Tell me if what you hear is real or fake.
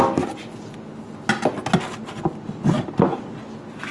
real